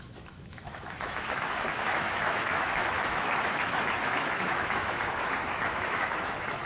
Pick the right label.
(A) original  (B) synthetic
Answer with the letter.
B